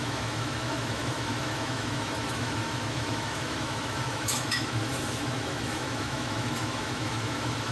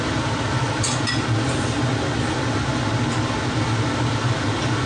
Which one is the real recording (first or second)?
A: second